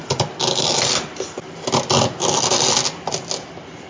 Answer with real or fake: real